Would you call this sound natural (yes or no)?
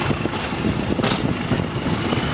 yes